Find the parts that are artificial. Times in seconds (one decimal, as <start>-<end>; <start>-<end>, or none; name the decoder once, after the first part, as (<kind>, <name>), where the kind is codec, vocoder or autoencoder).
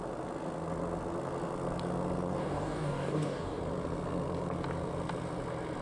2.4-3.6 (codec, DAC)